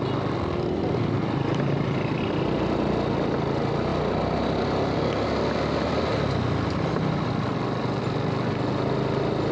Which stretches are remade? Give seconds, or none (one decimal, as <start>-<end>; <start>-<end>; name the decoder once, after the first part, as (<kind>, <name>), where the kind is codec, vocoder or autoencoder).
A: none